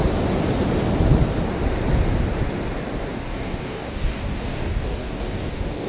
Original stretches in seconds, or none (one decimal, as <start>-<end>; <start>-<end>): 0.0-3.1